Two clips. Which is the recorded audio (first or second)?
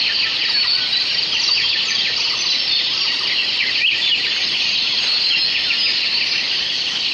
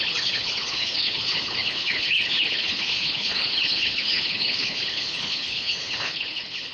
first